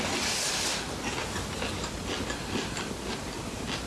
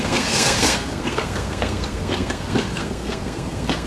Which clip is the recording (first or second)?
first